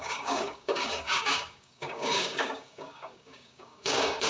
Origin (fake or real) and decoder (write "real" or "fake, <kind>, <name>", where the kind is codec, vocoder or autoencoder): fake, codec, DAC